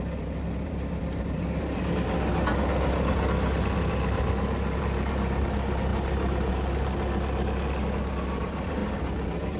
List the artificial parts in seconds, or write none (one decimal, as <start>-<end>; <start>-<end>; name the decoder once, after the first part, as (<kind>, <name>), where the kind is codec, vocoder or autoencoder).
0.0-2.5 (vocoder, BigVGAN v2); 4.8-5.9; 6.5-9.6